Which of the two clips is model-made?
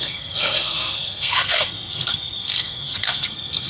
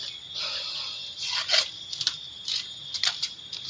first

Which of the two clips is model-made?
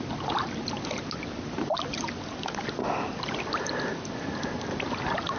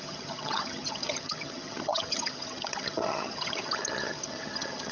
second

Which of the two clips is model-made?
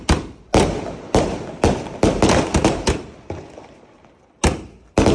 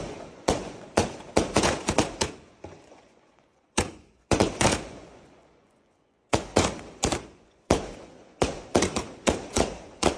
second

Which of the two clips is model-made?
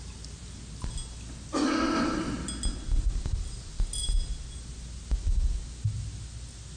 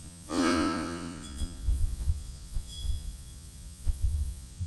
second